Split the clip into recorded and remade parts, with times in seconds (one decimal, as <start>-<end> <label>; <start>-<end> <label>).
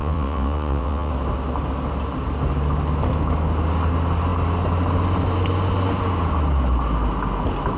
0.0-1.1 remade; 1.1-7.8 recorded